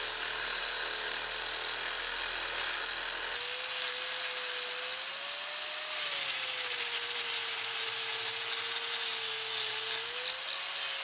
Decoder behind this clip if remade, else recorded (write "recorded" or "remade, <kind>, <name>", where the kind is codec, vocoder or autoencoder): recorded